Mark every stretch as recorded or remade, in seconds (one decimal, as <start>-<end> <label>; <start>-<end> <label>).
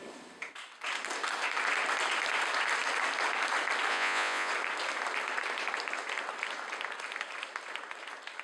0.0-3.9 recorded; 3.9-4.5 remade; 4.5-8.4 recorded